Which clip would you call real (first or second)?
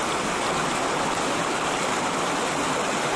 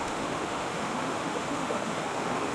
first